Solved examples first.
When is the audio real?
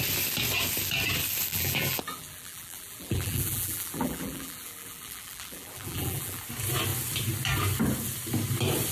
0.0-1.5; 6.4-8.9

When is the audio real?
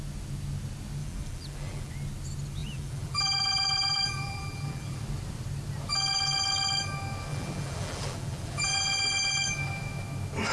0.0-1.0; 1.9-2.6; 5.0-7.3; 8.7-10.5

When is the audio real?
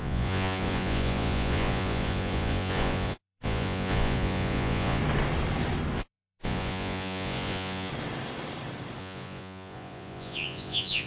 5.0-6.0; 7.9-9.0